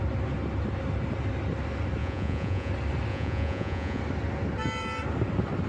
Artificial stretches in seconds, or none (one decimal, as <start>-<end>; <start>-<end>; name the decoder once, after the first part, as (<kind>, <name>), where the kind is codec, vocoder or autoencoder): 2.0-2.7 (vocoder, Vocos); 3.1-4.0